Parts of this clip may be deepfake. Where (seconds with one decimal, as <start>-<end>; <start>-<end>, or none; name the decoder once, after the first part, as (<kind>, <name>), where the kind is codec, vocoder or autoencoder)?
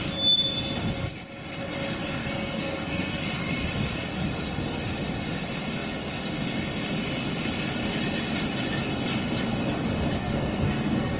2.2-3.2 (codec, SNAC); 10.2-11.2